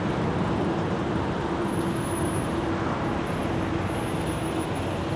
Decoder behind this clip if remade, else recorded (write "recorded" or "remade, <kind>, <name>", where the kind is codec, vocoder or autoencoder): recorded